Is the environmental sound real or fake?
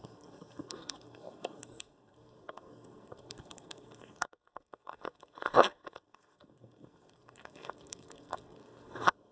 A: fake